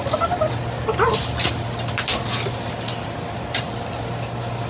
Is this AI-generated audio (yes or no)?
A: no